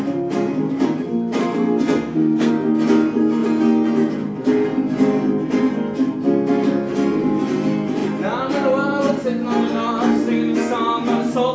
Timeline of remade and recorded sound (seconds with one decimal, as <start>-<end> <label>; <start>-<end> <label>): 0.0-1.4 recorded; 1.4-2.5 remade; 2.5-11.5 recorded